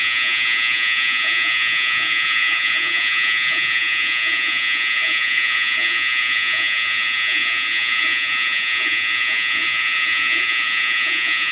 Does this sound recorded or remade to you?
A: remade